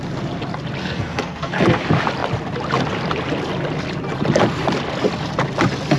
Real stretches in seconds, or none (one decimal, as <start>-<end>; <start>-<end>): 0.0-0.8; 1.8-6.0